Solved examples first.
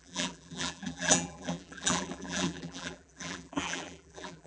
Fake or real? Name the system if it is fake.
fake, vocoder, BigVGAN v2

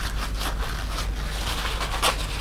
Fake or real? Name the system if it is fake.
real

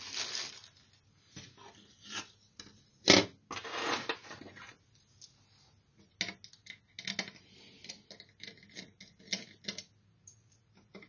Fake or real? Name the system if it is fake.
real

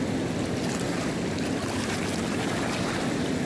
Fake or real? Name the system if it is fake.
real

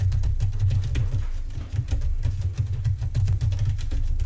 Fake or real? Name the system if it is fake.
real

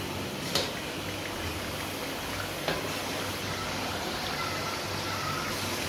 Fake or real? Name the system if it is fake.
real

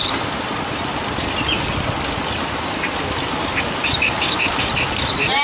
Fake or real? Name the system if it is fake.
real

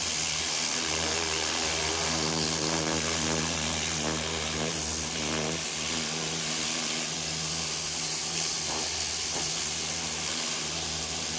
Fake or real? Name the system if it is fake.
real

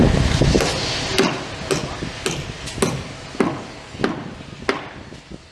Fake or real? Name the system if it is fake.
real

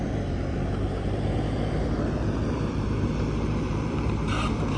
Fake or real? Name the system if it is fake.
fake, vocoder, BigVGAN v2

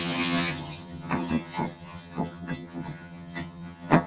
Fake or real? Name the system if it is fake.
fake, vocoder, HiFi-GAN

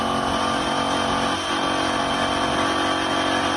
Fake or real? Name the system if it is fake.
real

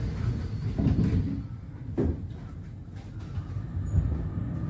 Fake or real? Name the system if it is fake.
real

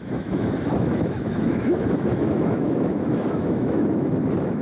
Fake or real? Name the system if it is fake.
fake, autoencoder, DAC-VAE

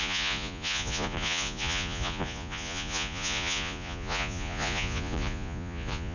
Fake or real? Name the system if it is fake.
fake, vocoder, Vocos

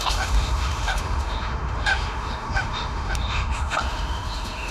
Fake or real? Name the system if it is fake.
fake, autoencoder, DAC-VAE